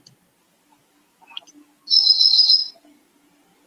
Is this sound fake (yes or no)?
no